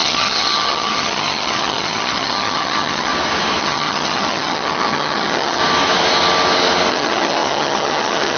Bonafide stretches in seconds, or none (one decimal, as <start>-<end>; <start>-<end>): 3.1-3.6; 5.6-6.9